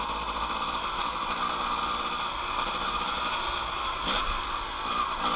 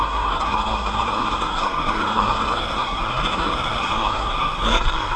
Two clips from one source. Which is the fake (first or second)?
second